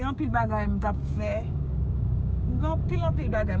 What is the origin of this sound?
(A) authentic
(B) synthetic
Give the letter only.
B